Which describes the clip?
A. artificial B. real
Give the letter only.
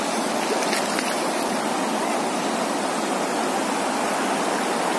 B